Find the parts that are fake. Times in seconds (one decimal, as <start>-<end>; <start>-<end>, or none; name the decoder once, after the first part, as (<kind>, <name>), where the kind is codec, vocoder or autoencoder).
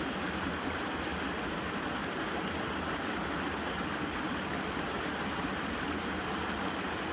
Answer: none